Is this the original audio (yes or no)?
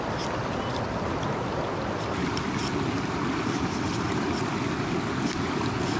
yes